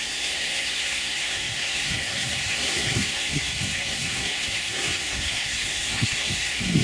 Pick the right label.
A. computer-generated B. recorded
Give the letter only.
A